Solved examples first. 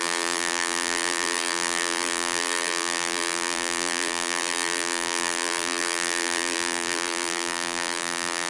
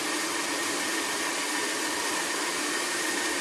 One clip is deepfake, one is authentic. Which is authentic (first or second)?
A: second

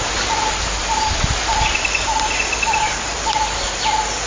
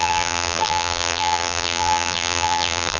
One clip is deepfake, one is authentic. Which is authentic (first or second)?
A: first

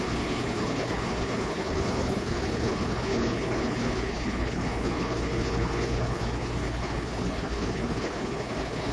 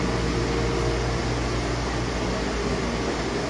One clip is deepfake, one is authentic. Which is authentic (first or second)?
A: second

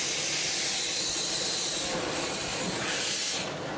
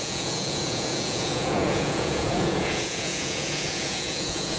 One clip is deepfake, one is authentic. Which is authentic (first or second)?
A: first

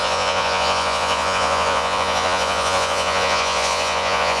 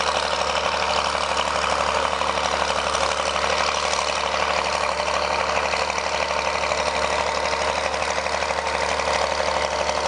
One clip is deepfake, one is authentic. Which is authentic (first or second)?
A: second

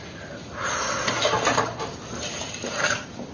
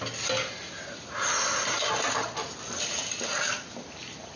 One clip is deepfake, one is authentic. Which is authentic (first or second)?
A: second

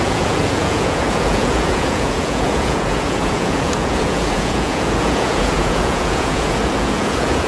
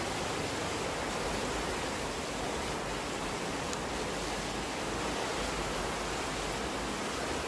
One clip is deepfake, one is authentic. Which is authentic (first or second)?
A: second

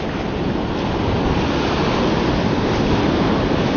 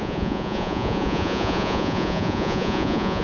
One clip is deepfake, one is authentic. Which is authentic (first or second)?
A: first